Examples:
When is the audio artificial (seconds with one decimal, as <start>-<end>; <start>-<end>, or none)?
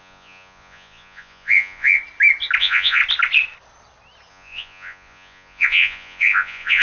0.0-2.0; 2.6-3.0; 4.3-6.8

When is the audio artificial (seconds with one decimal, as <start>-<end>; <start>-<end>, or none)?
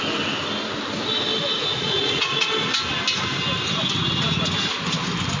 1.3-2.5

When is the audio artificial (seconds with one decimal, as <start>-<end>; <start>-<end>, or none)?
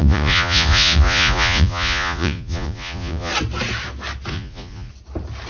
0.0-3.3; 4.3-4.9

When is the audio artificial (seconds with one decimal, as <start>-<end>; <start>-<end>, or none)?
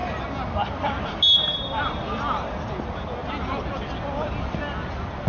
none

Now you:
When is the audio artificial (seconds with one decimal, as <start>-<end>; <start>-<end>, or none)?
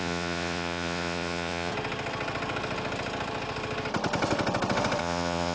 0.0-1.7; 5.0-5.5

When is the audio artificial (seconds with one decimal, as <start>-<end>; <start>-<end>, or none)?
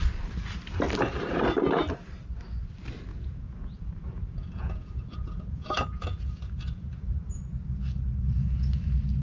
3.1-7.4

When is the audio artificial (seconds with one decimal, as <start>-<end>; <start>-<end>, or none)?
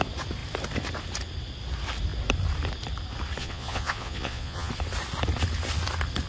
3.4-4.7